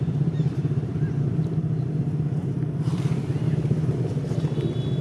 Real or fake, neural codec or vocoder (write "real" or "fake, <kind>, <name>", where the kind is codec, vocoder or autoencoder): fake, vocoder, BigVGAN v2